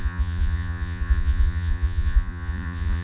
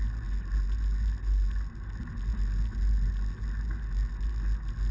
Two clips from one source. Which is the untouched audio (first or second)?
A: second